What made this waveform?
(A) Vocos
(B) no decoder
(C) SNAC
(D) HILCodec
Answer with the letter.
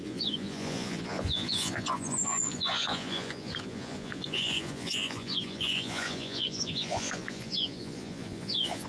A